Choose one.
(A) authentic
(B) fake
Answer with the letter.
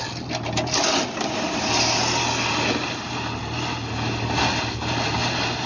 A